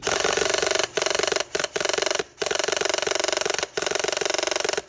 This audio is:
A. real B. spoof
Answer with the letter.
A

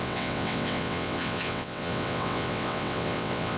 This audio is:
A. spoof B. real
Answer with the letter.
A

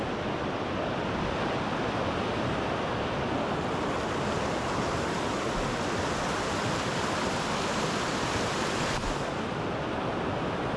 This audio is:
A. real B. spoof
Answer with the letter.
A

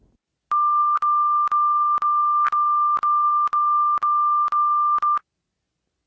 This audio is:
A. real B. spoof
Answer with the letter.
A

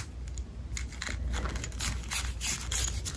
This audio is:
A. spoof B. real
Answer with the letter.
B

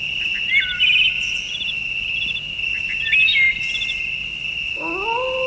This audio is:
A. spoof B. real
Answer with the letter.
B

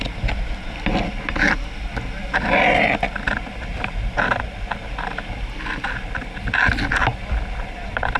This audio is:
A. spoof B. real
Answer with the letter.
B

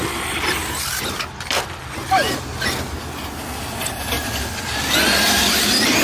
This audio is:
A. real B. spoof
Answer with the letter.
A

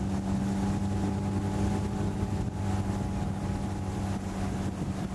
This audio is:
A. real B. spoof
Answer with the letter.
A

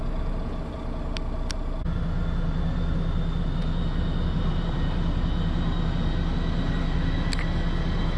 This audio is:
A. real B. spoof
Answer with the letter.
A